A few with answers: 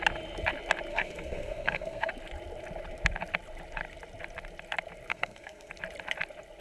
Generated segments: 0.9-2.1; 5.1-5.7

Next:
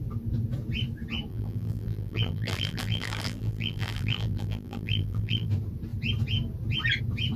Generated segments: 1.3-5.5

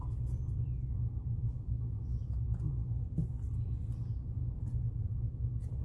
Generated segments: 1.4-2.0

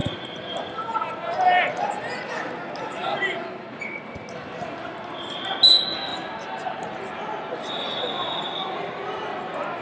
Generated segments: 0.0-2.5; 3.0-3.8; 6.1-6.9

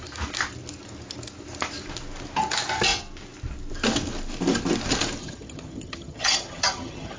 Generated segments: 5.2-7.2

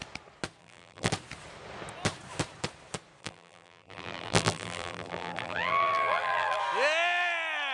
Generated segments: 0.6-1.1; 3.2-6.6

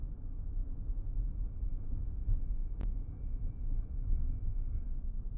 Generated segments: 0.6-3.8; 4.5-5.4

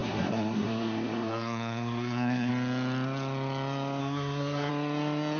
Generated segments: 0.0-2.5; 4.0-4.7